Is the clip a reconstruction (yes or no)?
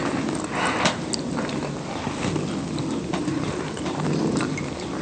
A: no